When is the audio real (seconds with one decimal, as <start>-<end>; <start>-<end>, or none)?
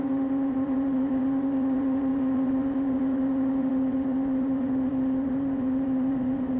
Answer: none